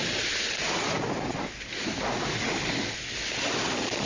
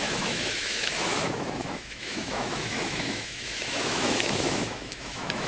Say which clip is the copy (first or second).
second